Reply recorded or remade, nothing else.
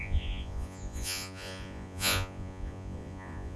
remade